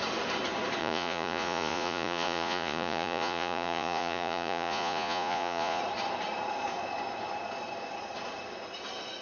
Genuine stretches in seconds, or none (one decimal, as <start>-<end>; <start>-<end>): 0.0-0.8; 5.8-9.2